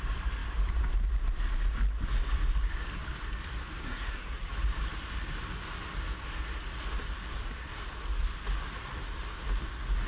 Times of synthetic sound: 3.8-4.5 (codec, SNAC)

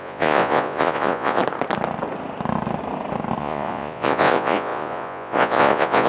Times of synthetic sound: 0.0-1.4 (vocoder, Vocos); 3.4-6.1

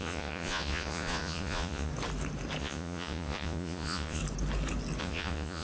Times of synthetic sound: 0.0-1.9 (vocoder, Vocos); 2.6-4.2; 5.0-5.6

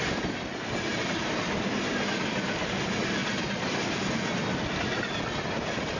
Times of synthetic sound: 0.9-1.8 (vocoder, BigVGAN v2); 3.2-4.0

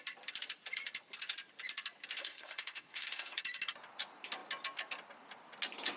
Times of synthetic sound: 2.2-3.4 (codec, SNAC)

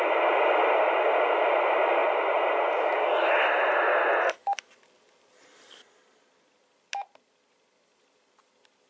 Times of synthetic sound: none

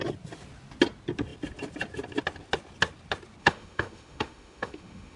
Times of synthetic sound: 3.4-5.2 (autoencoder, DAC-VAE)

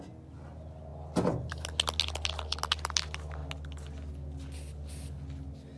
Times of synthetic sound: none